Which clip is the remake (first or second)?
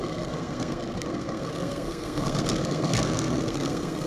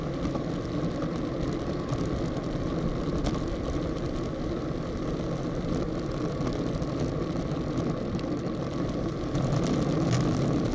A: first